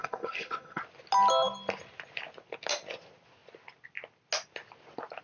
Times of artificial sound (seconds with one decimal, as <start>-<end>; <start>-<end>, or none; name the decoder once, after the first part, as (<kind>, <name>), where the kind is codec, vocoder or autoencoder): 0.0-0.8 (codec, HILCodec)